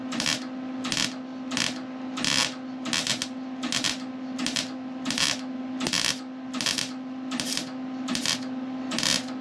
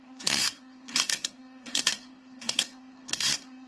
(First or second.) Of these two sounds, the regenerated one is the second